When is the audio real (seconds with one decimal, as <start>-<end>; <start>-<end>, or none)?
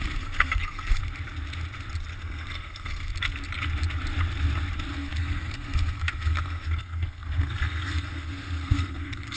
1.0-2.2; 3.1-4.9